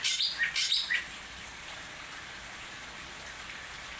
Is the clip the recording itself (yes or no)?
yes